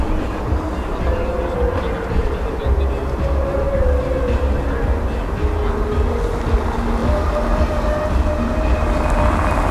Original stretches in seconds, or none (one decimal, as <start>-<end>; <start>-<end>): 0.0-9.7